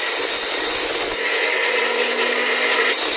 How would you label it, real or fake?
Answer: real